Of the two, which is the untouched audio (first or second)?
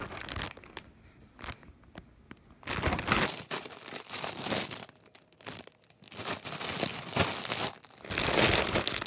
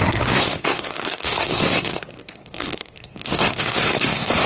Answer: first